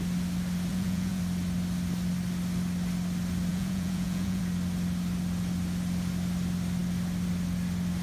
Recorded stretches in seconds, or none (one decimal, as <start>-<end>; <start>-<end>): 0.0-0.7; 1.2-3.5; 4.4-8.0